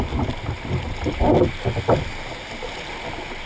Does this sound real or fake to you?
real